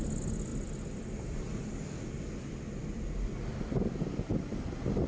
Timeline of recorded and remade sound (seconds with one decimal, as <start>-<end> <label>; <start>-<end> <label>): 0.0-5.1 recorded